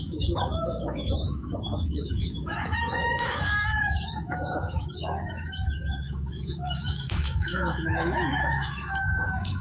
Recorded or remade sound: remade